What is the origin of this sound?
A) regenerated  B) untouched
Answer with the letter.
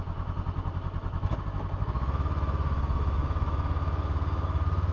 A